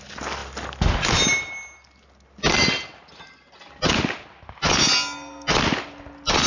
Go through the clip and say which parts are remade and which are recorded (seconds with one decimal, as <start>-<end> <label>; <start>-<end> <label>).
0.0-6.5 recorded